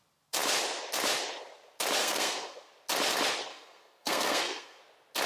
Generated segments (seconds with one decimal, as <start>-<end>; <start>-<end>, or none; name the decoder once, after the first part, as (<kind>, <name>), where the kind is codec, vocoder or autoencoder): 2.0-2.7 (codec, SNAC); 3.5-4.8